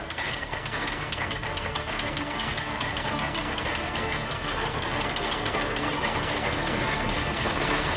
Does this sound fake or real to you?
fake